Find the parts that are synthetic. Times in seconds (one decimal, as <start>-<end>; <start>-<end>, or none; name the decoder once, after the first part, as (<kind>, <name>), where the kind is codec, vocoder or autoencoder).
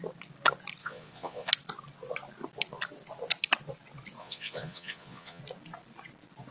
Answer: 0.8-1.5 (vocoder, Vocos); 4.2-5.4